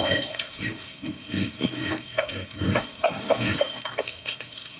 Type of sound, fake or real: fake